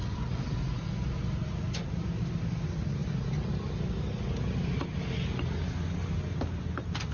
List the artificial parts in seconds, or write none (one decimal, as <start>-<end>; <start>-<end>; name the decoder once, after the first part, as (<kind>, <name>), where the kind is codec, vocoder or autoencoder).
none

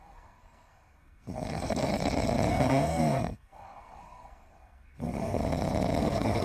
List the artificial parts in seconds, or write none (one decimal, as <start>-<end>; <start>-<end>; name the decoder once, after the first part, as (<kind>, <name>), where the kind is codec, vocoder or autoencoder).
0.0-1.9 (codec, SNAC); 2.5-5.4; 6.0-6.4

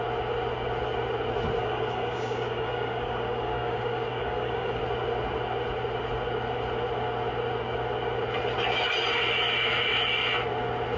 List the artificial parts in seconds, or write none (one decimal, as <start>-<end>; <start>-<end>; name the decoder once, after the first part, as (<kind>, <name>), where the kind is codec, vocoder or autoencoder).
1.6-4.8 (codec, DAC)

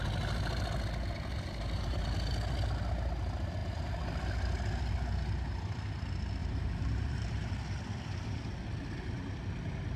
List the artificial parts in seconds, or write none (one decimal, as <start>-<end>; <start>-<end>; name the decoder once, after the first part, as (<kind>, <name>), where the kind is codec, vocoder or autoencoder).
1.3-2.0 (vocoder, BigVGAN v2); 6.4-7.5

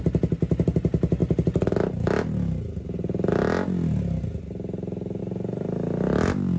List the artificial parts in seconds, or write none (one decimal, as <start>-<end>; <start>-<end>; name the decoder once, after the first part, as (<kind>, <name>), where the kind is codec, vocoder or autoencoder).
none

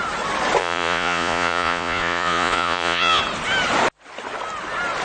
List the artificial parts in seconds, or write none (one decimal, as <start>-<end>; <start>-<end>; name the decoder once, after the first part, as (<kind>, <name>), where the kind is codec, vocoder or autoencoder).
0.6-3.2 (vocoder, Vocos)

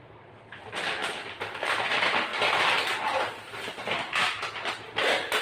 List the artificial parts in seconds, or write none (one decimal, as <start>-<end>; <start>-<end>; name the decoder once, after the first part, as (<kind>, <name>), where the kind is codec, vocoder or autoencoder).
0.0-1.0 (vocoder, BigVGAN v2); 1.9-5.4